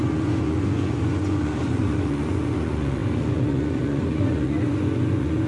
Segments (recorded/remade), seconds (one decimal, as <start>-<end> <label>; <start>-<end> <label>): 0.0-5.5 remade